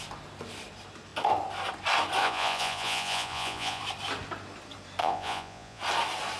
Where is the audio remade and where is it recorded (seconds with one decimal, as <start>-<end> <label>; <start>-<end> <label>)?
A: 0.0-2.2 recorded; 2.2-3.8 remade; 3.8-5.0 recorded; 5.0-5.8 remade; 5.8-6.4 recorded